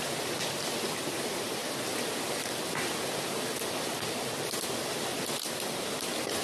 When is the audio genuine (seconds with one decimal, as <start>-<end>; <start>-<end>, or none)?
0.0-6.4